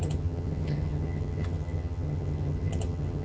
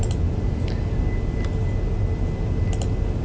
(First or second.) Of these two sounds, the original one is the second